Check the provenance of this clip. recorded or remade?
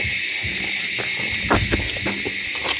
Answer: recorded